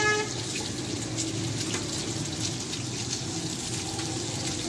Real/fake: real